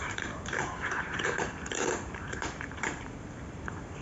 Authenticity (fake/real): fake